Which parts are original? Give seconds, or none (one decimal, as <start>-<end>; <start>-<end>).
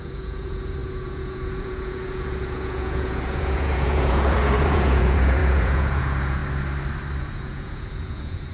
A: 6.4-7.2